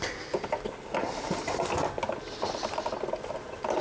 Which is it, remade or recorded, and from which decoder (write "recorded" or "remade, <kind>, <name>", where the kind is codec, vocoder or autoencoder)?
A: recorded